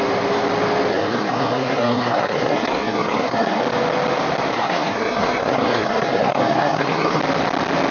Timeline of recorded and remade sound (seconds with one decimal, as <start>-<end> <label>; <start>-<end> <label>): 0.0-0.9 recorded; 0.9-3.6 remade; 3.6-4.5 recorded; 4.5-7.2 remade; 7.2-7.9 recorded

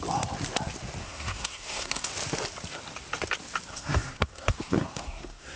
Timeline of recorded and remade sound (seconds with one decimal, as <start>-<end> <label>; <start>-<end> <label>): 0.0-1.0 recorded; 1.0-2.1 remade; 2.1-3.7 recorded; 3.7-5.6 remade

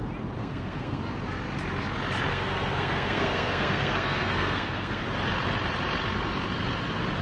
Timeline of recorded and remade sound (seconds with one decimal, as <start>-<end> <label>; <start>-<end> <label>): 0.0-0.4 recorded; 0.4-1.0 remade; 1.0-2.3 recorded; 2.3-5.0 remade; 5.0-7.2 recorded

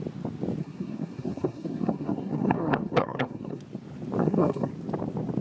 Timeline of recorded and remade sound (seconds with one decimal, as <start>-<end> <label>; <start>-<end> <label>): 0.0-0.6 recorded; 0.6-3.6 remade; 3.6-4.2 recorded; 4.2-4.7 remade; 4.7-5.4 recorded